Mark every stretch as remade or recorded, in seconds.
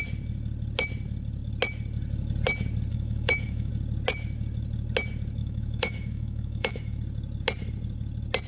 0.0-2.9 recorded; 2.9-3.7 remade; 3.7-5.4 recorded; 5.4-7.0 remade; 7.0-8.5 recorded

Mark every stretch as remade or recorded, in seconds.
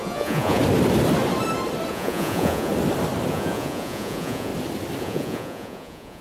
0.0-0.6 remade; 0.6-1.9 recorded; 1.9-2.7 remade; 2.7-3.3 recorded; 3.3-4.5 remade; 4.5-5.0 recorded; 5.0-6.2 remade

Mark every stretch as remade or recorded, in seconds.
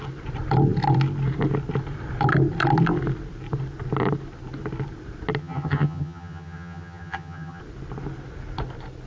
0.0-5.4 recorded; 5.4-7.6 remade; 7.6-9.1 recorded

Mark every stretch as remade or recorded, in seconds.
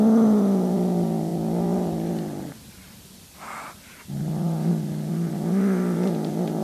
0.0-6.6 recorded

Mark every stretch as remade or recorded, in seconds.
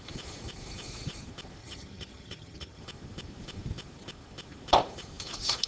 0.0-1.6 recorded; 1.6-2.8 remade; 2.8-5.7 recorded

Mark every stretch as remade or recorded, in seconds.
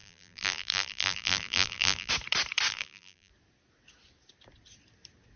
0.0-2.1 remade; 2.1-2.7 recorded; 2.7-3.3 remade; 3.3-5.4 recorded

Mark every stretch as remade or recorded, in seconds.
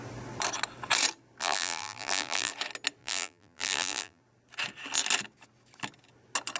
0.0-1.4 recorded; 1.4-2.5 remade; 2.5-3.0 recorded; 3.0-4.2 remade; 4.2-6.6 recorded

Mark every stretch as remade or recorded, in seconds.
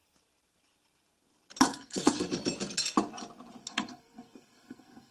0.0-1.7 recorded; 1.7-2.3 remade; 2.3-3.6 recorded; 3.6-5.1 remade